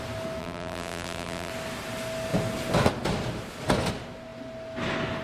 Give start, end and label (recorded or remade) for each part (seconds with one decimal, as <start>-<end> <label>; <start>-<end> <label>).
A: 0.0-0.4 recorded; 0.4-1.5 remade; 1.5-5.2 recorded